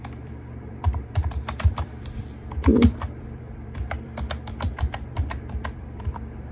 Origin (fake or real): fake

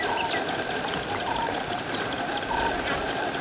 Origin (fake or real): fake